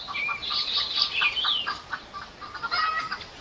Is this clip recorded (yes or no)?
yes